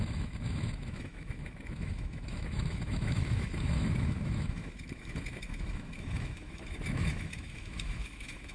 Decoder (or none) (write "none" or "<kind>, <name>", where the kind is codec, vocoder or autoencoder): autoencoder, DAC-VAE